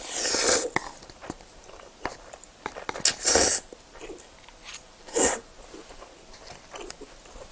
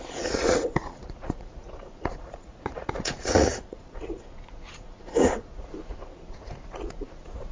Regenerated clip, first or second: second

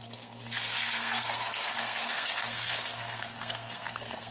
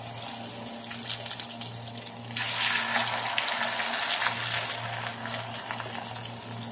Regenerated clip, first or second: first